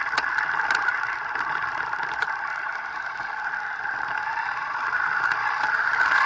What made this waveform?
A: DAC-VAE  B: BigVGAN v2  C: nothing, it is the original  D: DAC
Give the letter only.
C